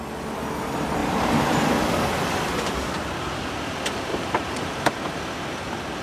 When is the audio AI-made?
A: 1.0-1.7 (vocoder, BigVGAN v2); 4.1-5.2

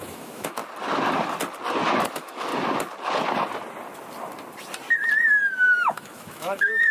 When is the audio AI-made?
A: 0.0-0.6 (autoencoder, DAC-VAE); 2.1-2.5; 5.5-6.9

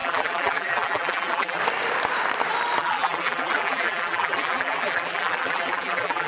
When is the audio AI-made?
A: 0.0-1.6 (vocoder, BigVGAN v2); 2.8-6.3

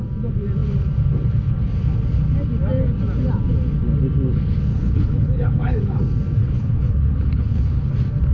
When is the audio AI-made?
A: 4.7-6.0 (codec, HILCodec); 6.4-7.9